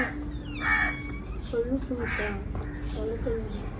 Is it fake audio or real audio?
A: real